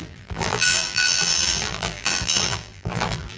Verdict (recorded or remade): remade